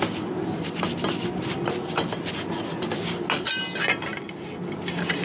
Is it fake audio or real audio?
real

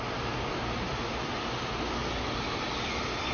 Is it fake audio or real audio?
real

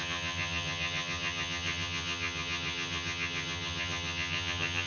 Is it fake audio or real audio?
fake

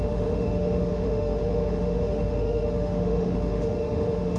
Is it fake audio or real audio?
fake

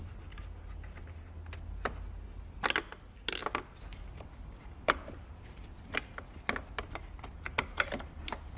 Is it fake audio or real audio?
real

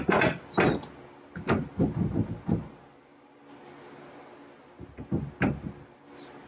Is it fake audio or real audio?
real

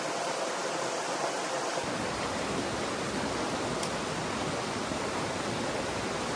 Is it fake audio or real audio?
real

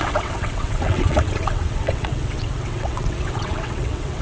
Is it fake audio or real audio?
fake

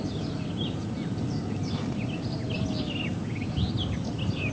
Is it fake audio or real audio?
real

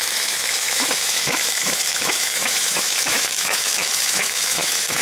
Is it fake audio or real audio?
fake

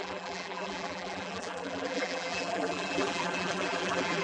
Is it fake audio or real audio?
fake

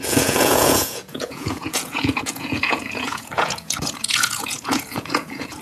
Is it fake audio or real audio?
fake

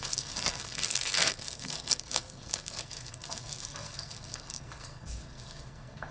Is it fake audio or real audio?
fake